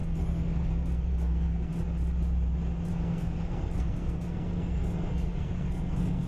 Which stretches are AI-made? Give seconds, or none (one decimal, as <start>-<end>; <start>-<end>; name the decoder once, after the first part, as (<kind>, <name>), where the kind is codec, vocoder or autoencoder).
0.0-1.7 (codec, SNAC); 2.9-6.3